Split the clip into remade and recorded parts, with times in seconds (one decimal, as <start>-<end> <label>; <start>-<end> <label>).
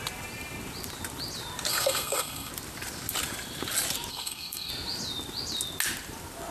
0.0-1.7 recorded; 1.7-2.5 remade; 2.5-4.1 recorded; 4.1-4.7 remade; 4.7-6.5 recorded